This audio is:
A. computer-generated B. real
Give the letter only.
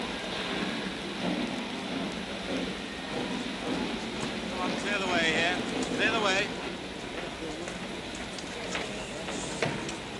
B